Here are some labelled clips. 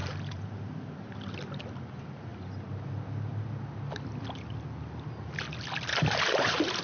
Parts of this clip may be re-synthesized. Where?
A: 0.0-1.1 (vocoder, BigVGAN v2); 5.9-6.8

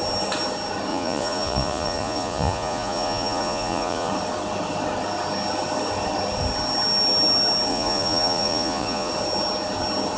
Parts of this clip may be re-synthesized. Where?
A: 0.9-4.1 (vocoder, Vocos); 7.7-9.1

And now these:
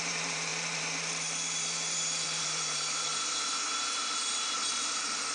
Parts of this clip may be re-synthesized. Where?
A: 0.0-3.1 (vocoder, BigVGAN v2); 3.6-5.3

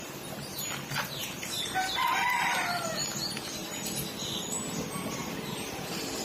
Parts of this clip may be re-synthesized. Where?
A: 5.2-6.2 (vocoder, BigVGAN v2)

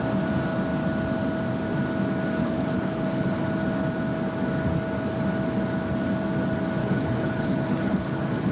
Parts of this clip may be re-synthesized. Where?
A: 2.4-3.4 (codec, HILCodec); 6.8-8.5

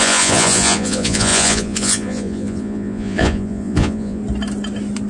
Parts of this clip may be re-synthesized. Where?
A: 0.0-4.2 (vocoder, Vocos)

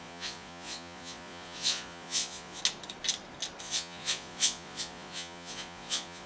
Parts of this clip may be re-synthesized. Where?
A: 0.0-2.6 (vocoder, Vocos); 3.6-6.3